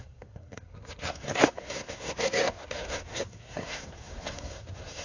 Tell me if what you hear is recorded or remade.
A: remade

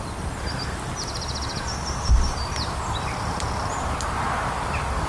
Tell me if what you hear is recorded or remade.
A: recorded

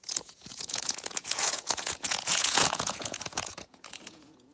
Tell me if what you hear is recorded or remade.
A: remade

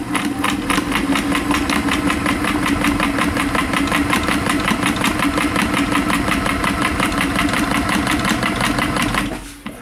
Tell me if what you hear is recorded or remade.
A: recorded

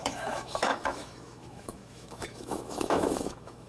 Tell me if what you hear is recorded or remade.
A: remade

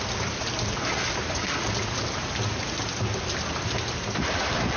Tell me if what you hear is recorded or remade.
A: recorded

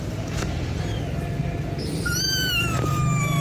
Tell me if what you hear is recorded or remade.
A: remade